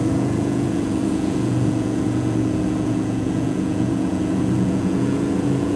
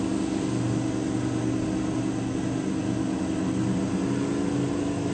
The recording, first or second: second